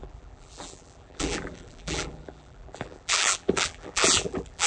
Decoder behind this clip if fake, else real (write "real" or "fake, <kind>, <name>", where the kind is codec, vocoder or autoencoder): fake, vocoder, BigVGAN v2